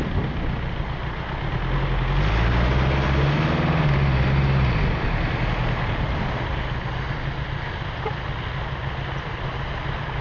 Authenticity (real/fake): real